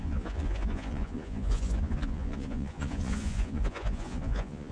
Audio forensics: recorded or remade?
remade